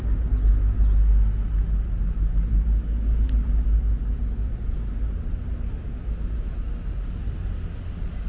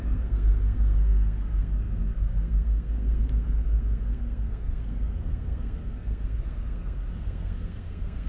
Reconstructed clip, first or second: second